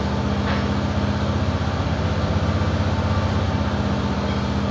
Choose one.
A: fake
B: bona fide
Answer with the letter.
B